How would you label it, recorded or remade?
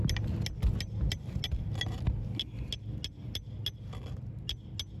recorded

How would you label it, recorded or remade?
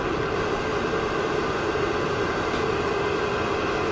recorded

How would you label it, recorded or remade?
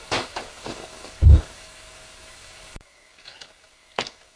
remade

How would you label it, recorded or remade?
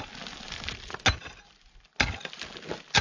recorded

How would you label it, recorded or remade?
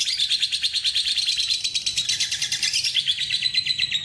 recorded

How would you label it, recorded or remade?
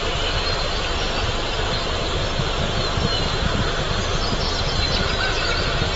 recorded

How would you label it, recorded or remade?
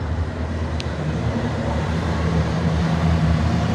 remade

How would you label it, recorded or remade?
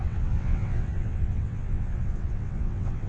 remade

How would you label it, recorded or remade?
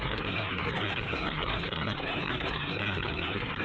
remade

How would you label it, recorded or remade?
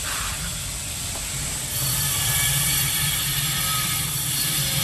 remade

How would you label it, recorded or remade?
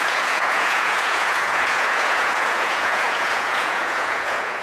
remade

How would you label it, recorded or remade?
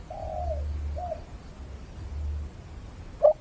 recorded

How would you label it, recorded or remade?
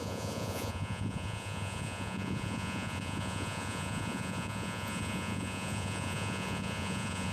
remade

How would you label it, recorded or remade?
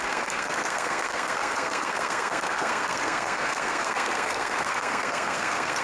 remade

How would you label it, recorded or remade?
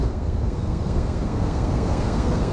remade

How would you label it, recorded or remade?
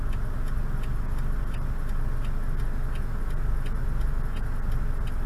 recorded